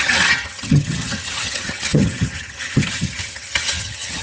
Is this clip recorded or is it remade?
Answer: remade